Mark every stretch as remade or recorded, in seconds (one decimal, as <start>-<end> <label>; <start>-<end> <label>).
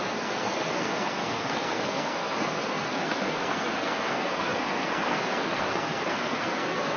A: 0.0-7.0 remade